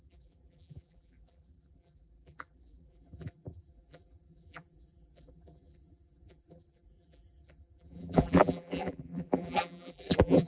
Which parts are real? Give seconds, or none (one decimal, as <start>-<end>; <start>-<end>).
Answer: none